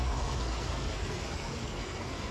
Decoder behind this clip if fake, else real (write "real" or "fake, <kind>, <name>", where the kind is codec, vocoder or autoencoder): fake, codec, SNAC